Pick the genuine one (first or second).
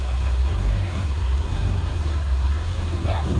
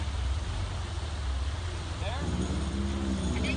second